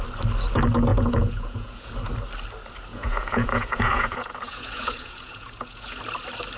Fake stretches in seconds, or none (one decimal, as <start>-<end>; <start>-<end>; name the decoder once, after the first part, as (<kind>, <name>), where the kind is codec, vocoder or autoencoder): 0.9-1.9 (vocoder, Vocos); 2.9-6.0